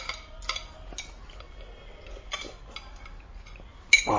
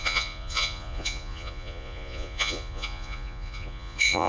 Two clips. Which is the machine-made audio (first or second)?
second